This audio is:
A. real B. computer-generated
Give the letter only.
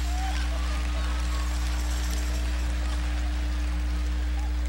A